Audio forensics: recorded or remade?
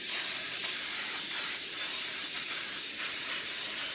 remade